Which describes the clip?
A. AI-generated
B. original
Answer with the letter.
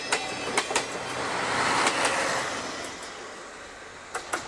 B